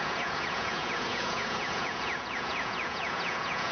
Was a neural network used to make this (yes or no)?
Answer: yes